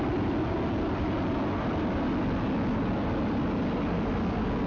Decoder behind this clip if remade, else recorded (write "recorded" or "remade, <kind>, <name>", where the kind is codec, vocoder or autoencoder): recorded